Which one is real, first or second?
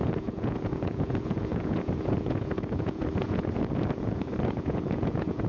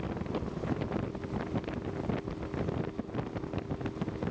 second